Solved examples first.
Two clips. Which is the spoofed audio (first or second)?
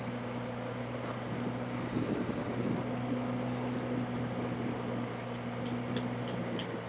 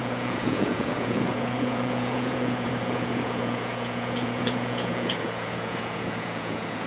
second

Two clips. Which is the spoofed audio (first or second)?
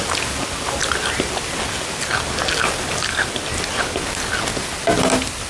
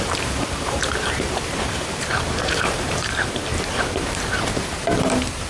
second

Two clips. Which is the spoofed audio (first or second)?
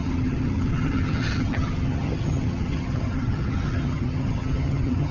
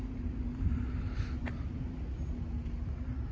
first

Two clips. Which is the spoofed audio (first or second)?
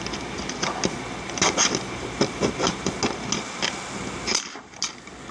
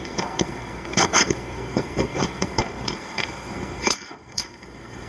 second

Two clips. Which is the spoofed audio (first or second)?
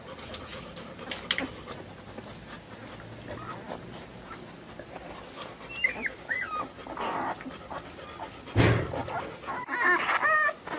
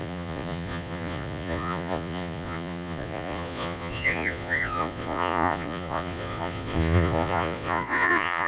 second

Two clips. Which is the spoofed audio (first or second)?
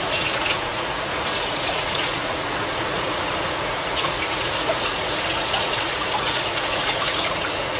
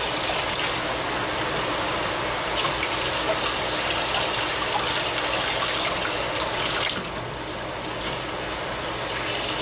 first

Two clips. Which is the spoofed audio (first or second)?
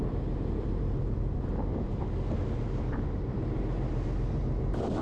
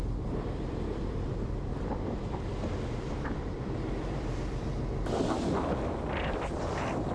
second